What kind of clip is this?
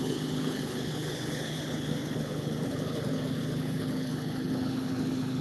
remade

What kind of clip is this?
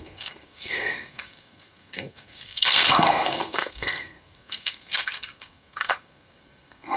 remade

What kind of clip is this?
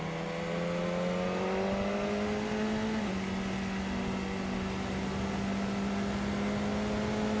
recorded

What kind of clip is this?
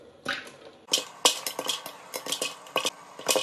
recorded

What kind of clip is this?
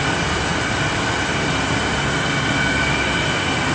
recorded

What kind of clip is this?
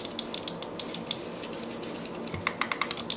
recorded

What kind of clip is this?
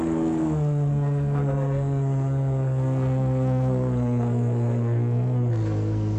remade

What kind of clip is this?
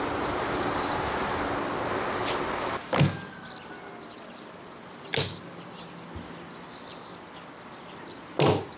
recorded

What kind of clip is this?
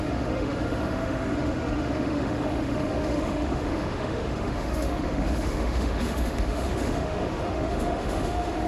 remade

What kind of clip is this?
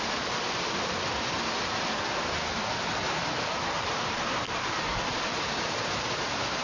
recorded